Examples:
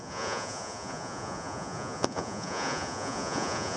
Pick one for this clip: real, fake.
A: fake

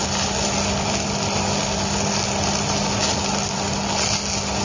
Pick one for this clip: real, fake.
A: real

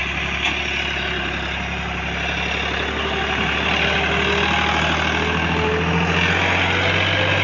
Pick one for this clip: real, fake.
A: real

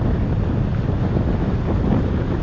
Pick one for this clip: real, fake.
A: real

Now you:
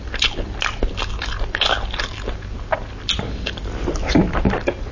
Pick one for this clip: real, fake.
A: real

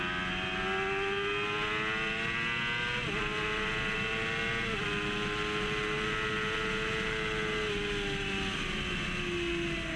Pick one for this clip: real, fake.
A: real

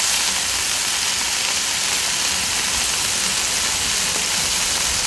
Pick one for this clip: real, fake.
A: real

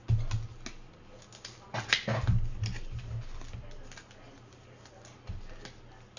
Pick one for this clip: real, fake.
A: real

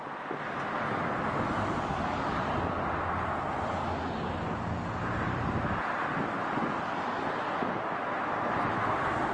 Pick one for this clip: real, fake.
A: real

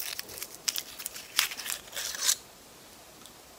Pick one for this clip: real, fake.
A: real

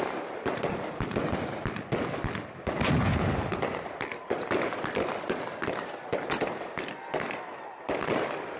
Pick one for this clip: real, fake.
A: real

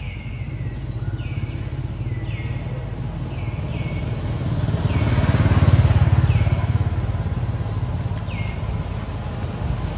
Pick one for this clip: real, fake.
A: real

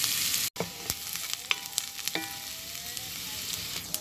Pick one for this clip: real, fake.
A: real